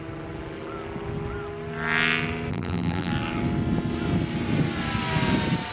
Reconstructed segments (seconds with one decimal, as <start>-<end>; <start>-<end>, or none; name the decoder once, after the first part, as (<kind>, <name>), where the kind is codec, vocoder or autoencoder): 2.5-3.1 (vocoder, BigVGAN v2)